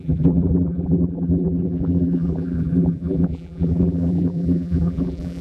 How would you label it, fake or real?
fake